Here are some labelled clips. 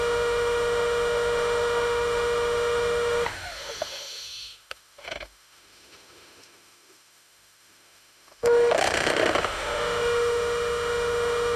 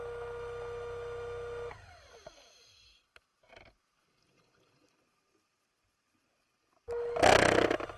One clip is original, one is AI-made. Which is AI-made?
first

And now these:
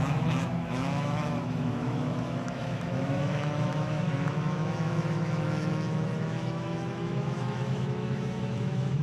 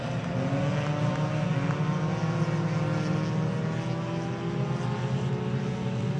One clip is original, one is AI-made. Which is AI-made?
first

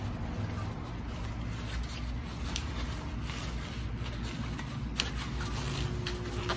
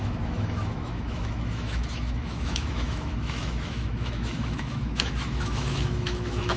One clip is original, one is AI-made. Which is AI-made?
second